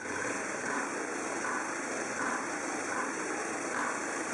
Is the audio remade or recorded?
remade